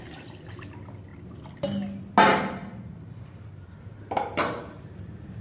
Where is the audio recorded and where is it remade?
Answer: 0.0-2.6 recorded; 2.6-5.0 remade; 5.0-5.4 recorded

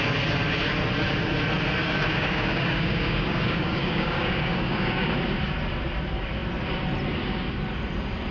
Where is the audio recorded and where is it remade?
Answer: 0.0-1.8 recorded; 1.8-5.1 remade; 5.1-8.3 recorded